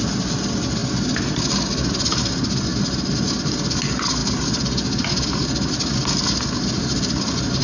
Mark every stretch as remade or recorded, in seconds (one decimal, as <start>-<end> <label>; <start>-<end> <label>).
0.0-7.6 recorded